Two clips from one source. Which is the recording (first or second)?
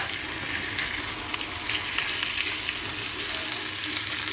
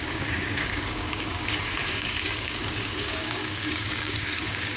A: first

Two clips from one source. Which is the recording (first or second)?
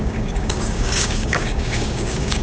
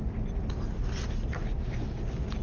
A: second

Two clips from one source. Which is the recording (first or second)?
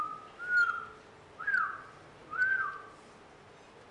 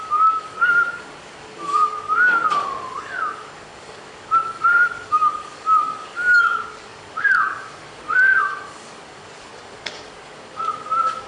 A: first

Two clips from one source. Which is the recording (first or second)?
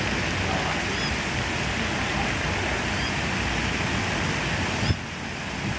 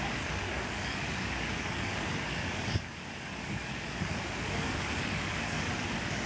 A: first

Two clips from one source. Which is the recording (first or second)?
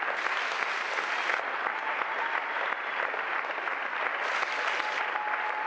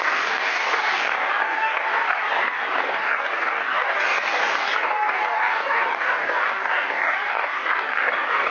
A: first